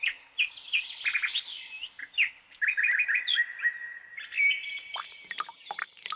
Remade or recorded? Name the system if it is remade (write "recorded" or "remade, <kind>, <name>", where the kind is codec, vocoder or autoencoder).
recorded